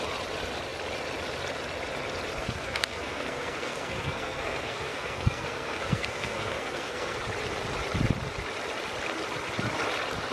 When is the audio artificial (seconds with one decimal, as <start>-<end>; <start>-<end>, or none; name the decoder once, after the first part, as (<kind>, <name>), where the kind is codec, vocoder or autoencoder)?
2.4-7.2 (codec, SNAC)